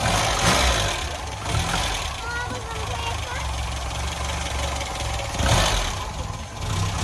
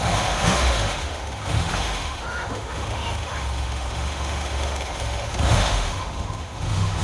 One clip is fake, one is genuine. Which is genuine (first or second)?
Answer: first